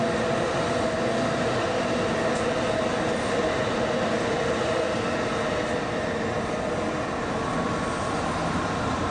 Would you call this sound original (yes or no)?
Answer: yes